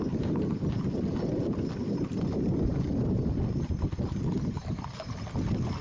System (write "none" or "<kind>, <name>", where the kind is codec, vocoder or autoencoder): none